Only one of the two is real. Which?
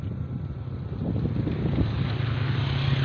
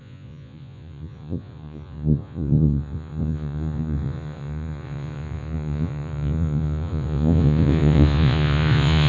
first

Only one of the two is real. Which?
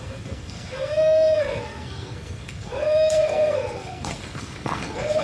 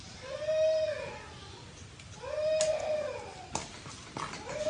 second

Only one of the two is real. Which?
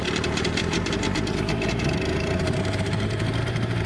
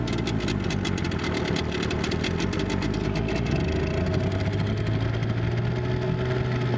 second